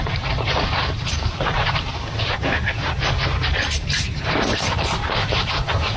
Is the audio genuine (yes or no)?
no